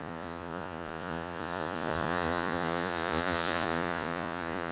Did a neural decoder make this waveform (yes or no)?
yes